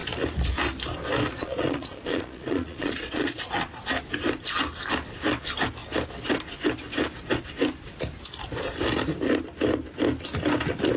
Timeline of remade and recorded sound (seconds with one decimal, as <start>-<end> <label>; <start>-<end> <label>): 0.0-1.4 recorded; 1.4-3.8 remade; 3.8-11.0 recorded